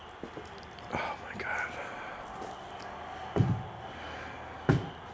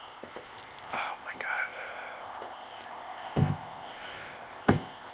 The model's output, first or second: second